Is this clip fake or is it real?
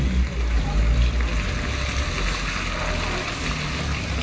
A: real